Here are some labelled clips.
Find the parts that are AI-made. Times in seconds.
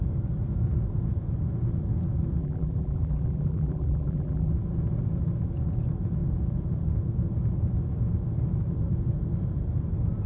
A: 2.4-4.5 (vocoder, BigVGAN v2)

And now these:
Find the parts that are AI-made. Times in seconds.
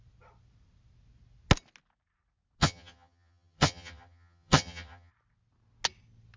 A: 2.6-5.1 (vocoder, HiFi-GAN)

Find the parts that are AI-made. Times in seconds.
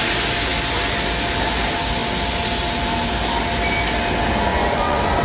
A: 4.5-5.2 (vocoder, Vocos)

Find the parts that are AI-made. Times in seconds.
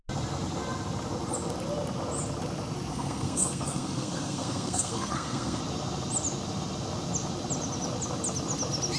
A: 2.9-5.6 (codec, SNAC)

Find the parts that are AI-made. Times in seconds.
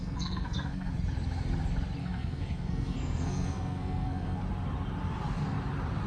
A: 0.0-0.9 (codec, SNAC); 2.0-4.4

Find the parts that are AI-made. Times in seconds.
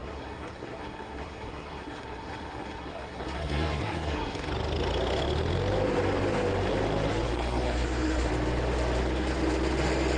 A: 0.0-4.5 (codec, SNAC); 7.1-8.3